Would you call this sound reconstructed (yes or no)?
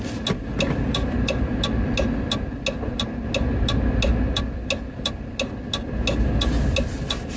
no